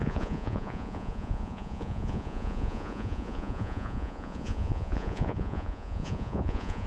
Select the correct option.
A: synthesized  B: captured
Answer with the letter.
A